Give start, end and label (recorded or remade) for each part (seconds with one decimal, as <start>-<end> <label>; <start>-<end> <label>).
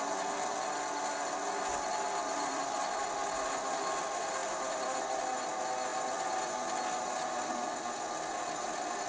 0.0-2.2 recorded; 2.2-3.1 remade; 3.1-4.4 recorded; 4.4-5.2 remade; 5.2-5.9 recorded; 5.9-6.8 remade; 6.8-9.1 recorded